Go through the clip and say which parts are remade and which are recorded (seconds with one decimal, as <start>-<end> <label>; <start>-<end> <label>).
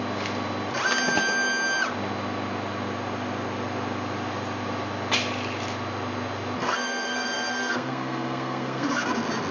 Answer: 0.0-6.6 recorded; 6.6-9.1 remade; 9.1-9.5 recorded